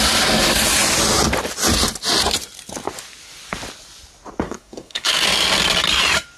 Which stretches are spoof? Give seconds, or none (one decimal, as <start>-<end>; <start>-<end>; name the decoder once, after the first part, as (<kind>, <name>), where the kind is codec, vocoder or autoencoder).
4.4-5.1 (codec, SNAC)